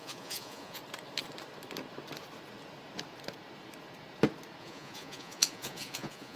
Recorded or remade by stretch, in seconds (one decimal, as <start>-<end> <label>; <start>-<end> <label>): 0.0-0.8 remade; 0.8-4.6 recorded; 4.6-6.4 remade